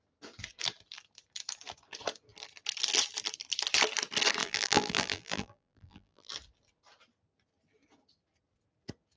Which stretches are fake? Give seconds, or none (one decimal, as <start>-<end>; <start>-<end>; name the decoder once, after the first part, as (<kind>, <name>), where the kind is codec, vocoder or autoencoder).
4.4-6.3 (vocoder, BigVGAN v2)

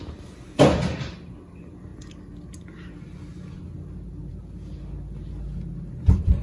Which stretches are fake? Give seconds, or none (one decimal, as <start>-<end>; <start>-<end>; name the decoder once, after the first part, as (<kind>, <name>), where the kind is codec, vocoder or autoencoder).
none

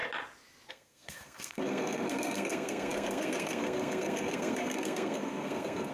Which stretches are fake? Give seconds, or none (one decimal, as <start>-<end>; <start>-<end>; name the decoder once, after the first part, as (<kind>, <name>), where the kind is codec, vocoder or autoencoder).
0.7-5.9 (codec, SNAC)

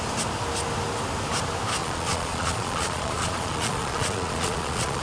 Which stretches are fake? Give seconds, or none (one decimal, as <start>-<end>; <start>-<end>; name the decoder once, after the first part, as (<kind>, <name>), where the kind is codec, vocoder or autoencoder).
1.8-5.0 (vocoder, Vocos)